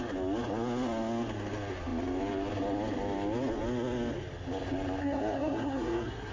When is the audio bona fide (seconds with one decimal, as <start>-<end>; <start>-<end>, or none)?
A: 0.0-5.0